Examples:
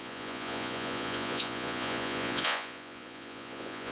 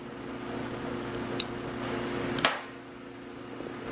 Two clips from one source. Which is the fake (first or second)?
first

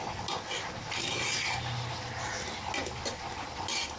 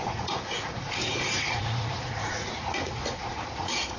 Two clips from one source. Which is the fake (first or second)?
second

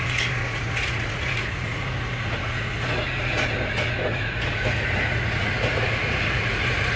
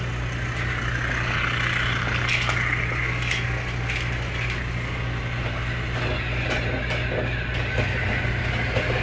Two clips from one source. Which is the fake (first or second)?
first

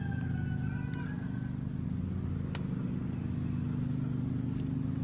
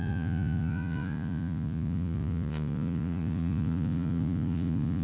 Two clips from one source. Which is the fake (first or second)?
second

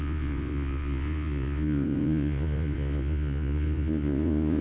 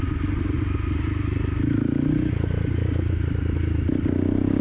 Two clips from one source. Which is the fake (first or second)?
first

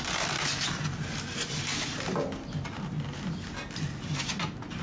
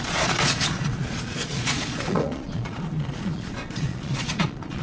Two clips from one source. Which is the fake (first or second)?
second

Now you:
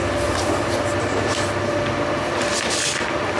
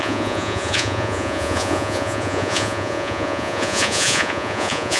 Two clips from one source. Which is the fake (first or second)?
second